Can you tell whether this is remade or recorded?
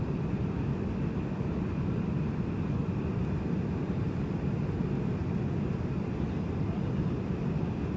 recorded